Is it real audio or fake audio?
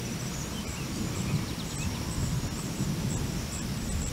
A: real